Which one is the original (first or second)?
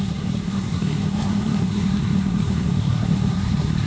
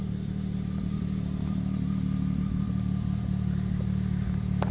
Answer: second